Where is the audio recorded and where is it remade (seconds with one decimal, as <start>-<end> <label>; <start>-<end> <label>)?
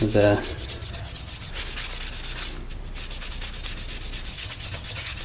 0.0-0.5 recorded; 0.5-1.5 remade; 1.5-4.3 recorded; 4.3-5.2 remade